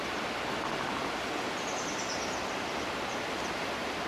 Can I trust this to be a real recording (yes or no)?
yes